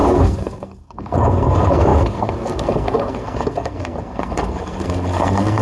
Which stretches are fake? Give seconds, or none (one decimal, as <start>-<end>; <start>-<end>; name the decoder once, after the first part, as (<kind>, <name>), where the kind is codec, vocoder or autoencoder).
0.0-5.6 (codec, SNAC)